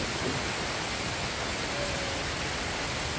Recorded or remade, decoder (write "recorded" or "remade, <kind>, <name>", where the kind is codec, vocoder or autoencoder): recorded